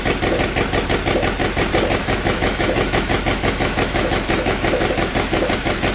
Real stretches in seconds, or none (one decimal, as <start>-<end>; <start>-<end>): 0.0-2.0; 5.5-5.9

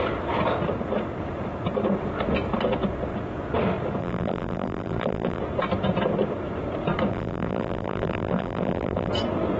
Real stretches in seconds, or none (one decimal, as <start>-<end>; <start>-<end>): 0.0-4.0; 5.4-7.1; 9.1-9.6

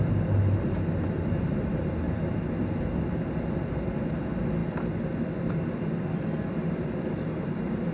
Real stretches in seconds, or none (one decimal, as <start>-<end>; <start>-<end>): 0.0-7.9

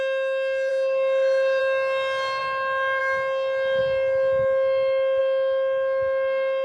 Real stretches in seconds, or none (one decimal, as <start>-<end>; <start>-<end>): 0.0-0.7; 1.6-6.6

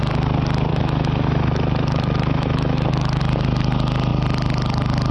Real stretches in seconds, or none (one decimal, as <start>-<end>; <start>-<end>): 0.0-0.7; 3.2-5.1

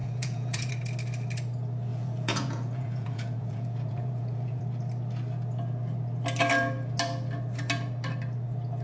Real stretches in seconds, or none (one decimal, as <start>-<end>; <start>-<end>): 0.7-1.9; 4.6-8.8

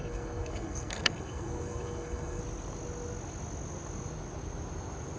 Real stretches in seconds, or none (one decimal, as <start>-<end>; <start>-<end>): 2.4-5.2